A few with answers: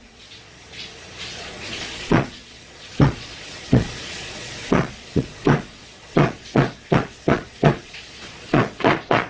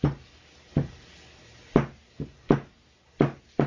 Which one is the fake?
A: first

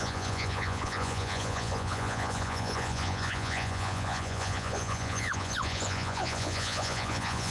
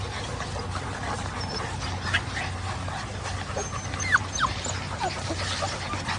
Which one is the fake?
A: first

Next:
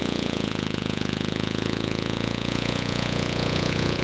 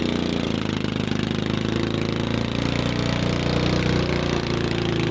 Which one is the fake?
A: first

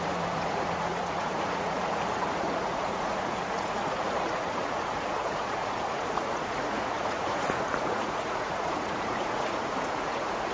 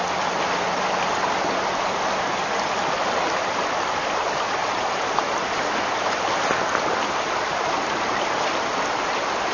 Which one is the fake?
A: first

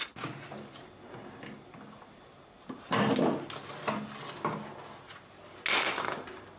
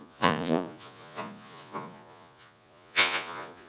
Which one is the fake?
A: second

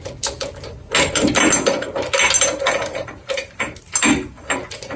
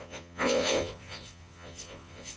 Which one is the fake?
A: second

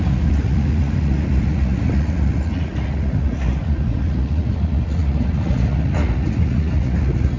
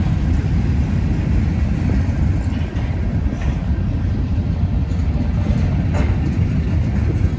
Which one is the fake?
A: first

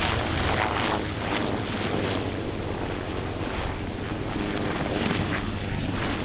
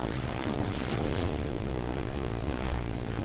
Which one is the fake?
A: second